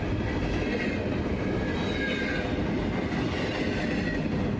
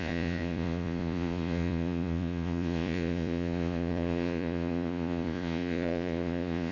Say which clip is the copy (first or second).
second